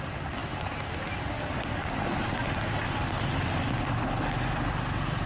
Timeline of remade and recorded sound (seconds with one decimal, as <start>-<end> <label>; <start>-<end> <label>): 0.0-5.3 recorded